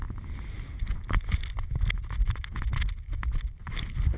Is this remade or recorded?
recorded